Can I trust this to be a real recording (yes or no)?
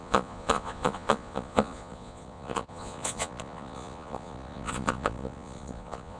no